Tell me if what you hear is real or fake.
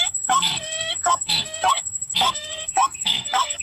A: fake